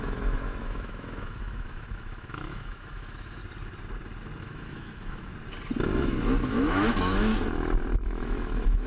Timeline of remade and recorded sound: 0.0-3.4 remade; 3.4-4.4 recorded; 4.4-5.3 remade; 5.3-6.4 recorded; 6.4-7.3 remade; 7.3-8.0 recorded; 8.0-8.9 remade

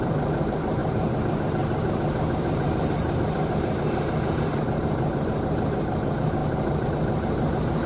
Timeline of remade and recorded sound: 0.0-7.9 remade

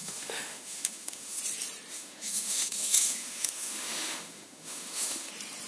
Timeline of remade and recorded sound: 0.0-1.4 remade; 1.4-1.9 recorded; 1.9-5.3 remade; 5.3-5.7 recorded

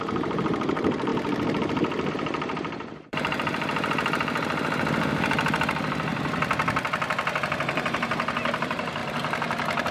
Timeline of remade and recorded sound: 0.0-1.1 remade; 1.1-2.1 recorded; 2.1-6.1 remade; 6.1-7.4 recorded; 7.4-9.0 remade; 9.0-9.9 recorded

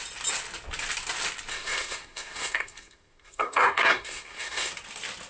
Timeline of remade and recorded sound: 0.0-1.5 recorded; 1.5-4.7 remade; 4.7-5.3 recorded

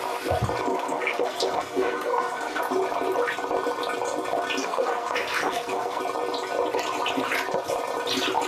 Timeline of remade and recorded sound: 0.0-0.7 recorded; 0.7-2.6 remade; 2.6-4.6 recorded; 4.6-6.0 remade; 6.0-8.5 recorded